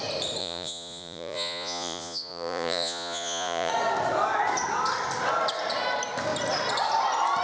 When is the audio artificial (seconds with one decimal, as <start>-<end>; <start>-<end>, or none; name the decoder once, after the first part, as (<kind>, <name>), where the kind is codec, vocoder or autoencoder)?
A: 0.4-3.7 (vocoder, Vocos)